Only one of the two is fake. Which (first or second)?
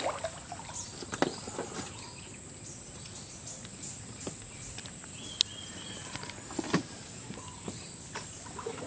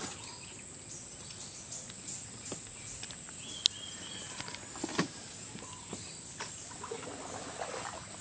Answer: first